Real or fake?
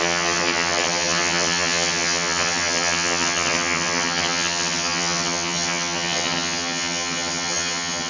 fake